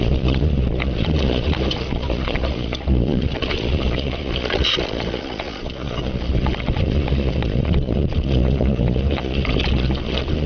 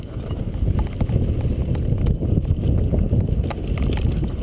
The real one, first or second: second